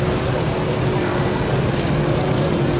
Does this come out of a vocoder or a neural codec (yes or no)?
no